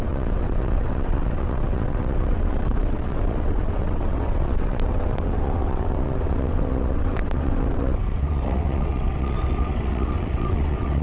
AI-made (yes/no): yes